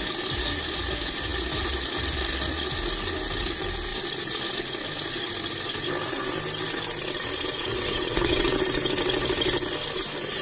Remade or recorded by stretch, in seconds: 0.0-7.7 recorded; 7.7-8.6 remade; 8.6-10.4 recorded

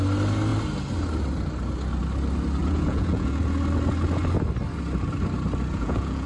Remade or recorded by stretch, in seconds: 0.0-2.6 recorded; 2.6-3.4 remade; 3.4-5.7 recorded; 5.7-6.3 remade